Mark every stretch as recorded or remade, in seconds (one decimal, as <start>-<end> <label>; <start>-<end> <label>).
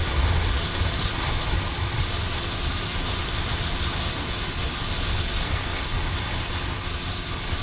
0.0-5.1 recorded; 5.1-5.8 remade; 5.8-7.6 recorded